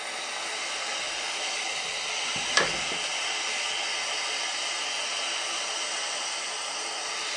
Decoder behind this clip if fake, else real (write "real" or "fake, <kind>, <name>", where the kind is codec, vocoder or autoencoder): real